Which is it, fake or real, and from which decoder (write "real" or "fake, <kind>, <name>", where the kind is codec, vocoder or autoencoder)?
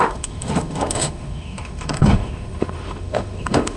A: fake, autoencoder, DAC-VAE